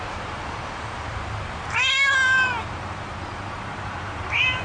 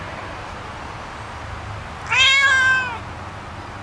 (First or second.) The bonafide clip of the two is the second